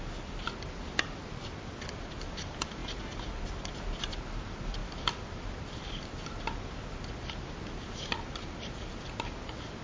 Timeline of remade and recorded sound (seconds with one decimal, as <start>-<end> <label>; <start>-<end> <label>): 0.0-9.8 recorded